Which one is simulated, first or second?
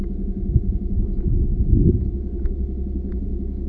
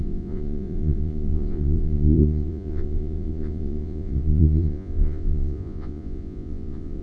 second